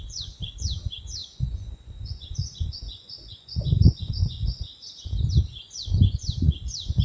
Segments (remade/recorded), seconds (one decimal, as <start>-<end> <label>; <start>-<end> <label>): 0.0-5.0 remade; 5.0-5.6 recorded; 5.6-7.0 remade